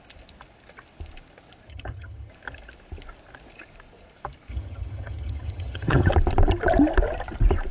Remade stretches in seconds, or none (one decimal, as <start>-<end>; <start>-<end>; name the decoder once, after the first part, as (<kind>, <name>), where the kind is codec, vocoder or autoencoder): 1.7-2.3 (vocoder, HiFi-GAN); 4.5-6.1